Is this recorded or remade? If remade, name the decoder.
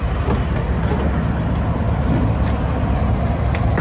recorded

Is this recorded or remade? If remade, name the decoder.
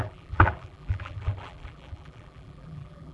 remade, vocoder, BigVGAN v2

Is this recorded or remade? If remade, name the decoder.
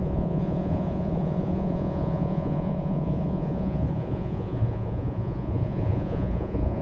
remade, vocoder, Vocos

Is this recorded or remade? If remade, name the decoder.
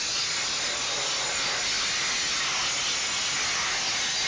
recorded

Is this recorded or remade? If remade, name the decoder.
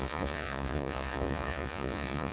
remade, vocoder, Vocos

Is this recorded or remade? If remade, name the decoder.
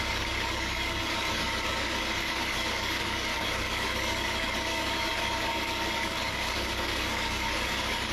remade, codec, DAC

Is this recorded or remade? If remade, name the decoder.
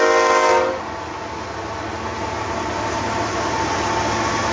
recorded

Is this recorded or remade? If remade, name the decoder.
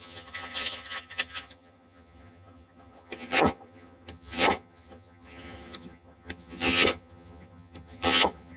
remade, vocoder, HiFi-GAN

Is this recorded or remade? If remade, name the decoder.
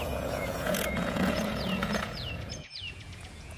remade, vocoder, Vocos